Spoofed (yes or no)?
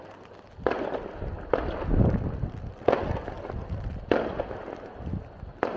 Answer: no